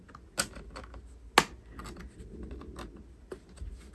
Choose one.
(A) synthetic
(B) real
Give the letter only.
B